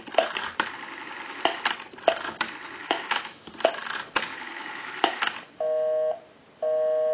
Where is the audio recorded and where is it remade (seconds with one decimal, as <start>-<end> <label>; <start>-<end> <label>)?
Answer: 0.0-2.8 recorded; 2.8-3.5 remade; 3.5-4.3 recorded; 4.3-5.2 remade; 5.2-7.1 recorded